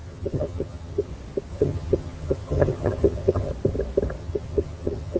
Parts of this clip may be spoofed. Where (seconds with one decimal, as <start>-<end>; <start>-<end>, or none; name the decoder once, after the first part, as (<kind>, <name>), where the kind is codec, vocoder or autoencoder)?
0.0-1.1 (vocoder, HiFi-GAN); 1.5-3.5; 4.2-5.2